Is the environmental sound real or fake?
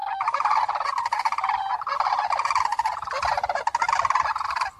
real